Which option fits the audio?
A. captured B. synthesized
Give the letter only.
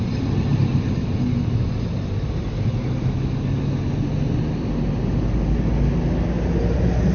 A